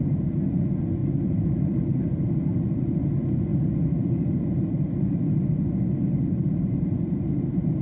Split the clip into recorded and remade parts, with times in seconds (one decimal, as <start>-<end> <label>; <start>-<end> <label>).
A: 0.0-1.0 recorded; 1.0-2.8 remade; 2.8-3.5 recorded; 3.5-6.8 remade; 6.8-7.8 recorded